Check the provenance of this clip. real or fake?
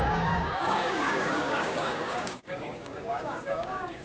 fake